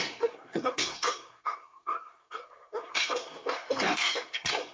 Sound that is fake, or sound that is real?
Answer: fake